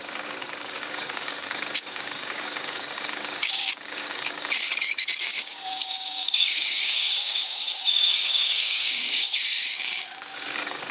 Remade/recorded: remade